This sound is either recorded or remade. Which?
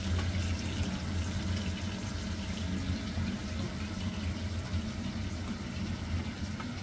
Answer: recorded